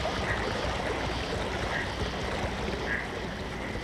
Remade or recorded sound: recorded